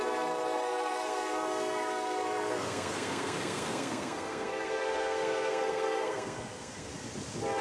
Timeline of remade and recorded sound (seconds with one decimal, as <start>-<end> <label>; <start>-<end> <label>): 0.0-6.9 remade; 6.9-7.6 recorded